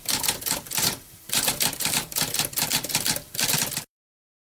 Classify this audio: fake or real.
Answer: fake